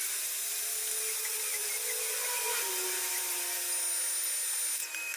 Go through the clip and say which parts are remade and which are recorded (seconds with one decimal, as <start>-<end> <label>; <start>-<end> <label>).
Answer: 0.0-5.2 recorded